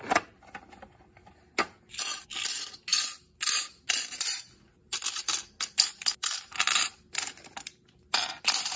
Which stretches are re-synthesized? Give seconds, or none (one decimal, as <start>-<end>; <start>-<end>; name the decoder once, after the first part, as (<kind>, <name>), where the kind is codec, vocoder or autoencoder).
none